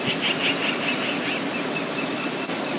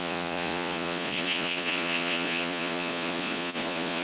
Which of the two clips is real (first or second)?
first